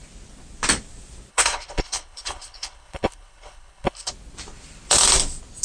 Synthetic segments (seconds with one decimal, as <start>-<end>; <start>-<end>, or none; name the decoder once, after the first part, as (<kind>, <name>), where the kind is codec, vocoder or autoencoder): 1.3-4.1 (codec, HILCodec)